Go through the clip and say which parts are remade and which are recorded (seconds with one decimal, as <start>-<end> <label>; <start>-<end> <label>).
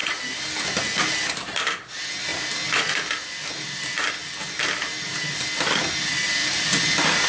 0.0-7.3 recorded